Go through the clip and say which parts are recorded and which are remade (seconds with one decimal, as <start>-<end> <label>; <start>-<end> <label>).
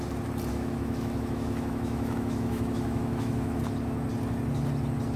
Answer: 0.0-0.5 recorded; 0.5-3.6 remade; 3.6-5.2 recorded